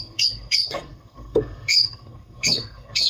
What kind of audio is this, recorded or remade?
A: remade